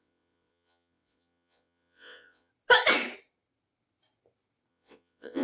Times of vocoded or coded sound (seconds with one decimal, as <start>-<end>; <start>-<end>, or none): 0.0-2.5; 4.7-5.4